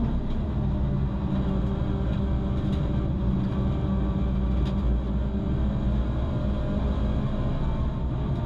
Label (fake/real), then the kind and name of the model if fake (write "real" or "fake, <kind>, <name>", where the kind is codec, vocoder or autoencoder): real